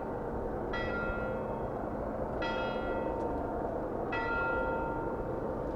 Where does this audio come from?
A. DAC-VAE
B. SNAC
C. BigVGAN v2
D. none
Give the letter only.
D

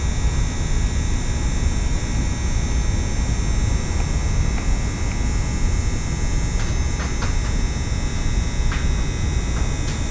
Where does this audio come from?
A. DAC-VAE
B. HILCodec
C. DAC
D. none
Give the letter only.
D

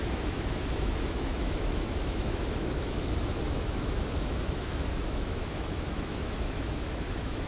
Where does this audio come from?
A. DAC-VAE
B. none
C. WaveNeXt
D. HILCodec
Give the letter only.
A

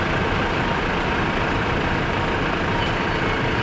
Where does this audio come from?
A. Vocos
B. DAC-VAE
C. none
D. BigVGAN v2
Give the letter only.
C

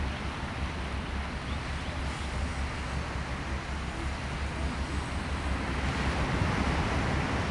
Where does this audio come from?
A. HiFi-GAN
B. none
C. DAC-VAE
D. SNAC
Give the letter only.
B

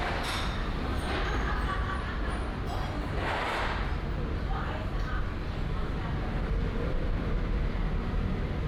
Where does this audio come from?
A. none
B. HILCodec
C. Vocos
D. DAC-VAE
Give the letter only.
A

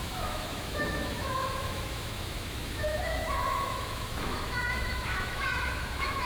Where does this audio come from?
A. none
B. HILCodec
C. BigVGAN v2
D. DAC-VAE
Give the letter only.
D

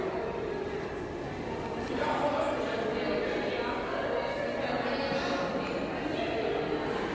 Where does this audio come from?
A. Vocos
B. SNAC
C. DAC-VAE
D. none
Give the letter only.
D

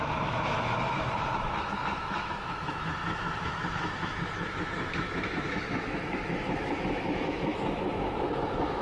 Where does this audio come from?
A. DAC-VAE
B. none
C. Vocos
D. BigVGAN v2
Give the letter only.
A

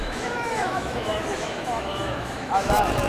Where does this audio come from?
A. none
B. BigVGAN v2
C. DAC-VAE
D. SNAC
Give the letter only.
C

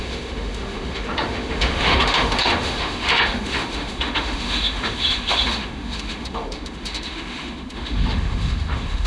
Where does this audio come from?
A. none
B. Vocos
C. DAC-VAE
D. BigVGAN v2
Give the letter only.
C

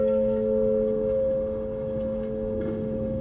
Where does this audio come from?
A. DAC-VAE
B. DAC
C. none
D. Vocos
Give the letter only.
A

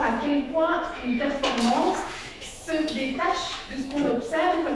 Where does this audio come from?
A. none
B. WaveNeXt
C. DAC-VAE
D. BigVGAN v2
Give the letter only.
C